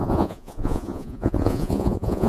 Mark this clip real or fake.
fake